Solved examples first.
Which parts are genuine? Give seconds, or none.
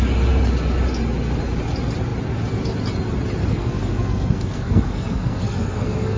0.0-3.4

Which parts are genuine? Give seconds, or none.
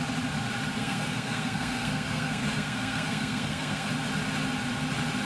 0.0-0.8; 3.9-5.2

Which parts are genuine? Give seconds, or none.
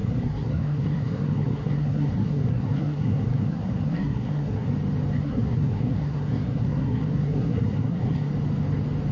4.7-5.2; 8.3-9.1